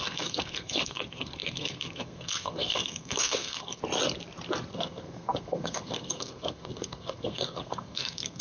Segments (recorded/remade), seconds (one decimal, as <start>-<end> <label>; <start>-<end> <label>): 0.0-3.8 remade; 3.8-4.7 recorded; 4.7-8.4 remade